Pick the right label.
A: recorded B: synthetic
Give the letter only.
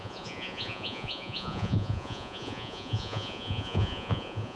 B